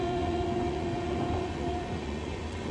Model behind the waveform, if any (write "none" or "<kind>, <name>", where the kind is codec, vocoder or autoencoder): vocoder, Vocos